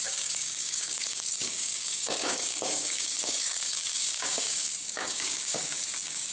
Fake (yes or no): yes